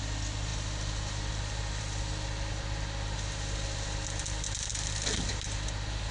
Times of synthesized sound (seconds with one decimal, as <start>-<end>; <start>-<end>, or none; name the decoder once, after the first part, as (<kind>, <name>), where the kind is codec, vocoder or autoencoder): none